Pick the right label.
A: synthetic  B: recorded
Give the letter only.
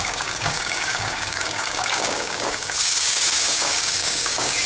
A